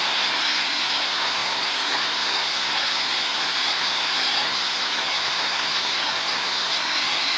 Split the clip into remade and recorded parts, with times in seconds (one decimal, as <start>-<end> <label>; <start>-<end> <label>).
0.0-7.4 remade

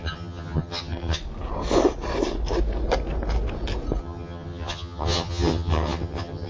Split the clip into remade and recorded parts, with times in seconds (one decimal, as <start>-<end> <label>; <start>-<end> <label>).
0.0-1.2 remade; 1.2-4.0 recorded; 4.0-6.5 remade

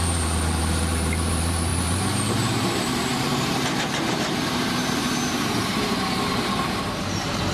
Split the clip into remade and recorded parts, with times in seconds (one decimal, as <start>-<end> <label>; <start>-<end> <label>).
0.0-7.5 remade

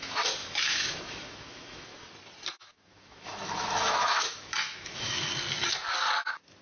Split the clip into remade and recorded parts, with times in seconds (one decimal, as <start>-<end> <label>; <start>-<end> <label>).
0.0-1.9 remade; 1.9-2.5 recorded; 2.5-5.3 remade; 5.3-6.6 recorded

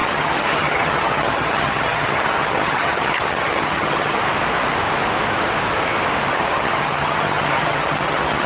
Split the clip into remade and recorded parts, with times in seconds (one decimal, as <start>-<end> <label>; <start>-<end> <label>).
0.0-4.2 remade; 4.2-6.3 recorded; 6.3-8.5 remade

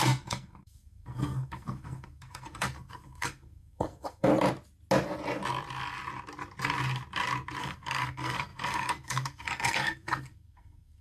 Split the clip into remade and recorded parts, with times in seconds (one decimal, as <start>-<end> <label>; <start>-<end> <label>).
0.0-4.3 remade; 4.3-7.6 recorded; 7.6-11.0 remade